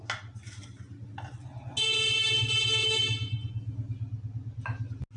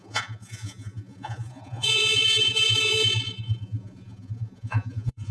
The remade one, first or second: second